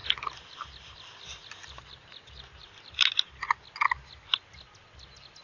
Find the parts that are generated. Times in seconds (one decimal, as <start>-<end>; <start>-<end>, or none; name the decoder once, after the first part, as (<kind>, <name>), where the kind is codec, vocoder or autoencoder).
none